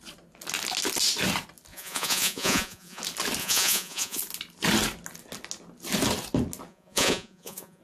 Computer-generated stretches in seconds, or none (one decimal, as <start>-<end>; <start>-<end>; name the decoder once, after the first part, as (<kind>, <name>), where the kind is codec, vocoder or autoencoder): 1.7-3.0 (vocoder, Vocos); 3.4-4.2; 6.7-7.8